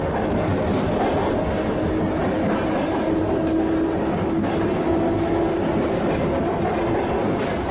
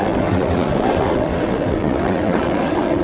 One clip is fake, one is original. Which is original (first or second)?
first